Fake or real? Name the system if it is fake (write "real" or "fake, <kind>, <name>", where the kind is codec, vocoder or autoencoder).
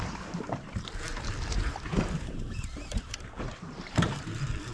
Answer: fake, vocoder, BigVGAN v2